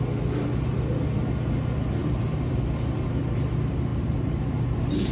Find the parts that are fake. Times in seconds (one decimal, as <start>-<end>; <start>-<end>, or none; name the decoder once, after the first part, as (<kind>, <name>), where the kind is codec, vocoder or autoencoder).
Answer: 2.0-2.6 (vocoder, BigVGAN v2); 3.9-5.1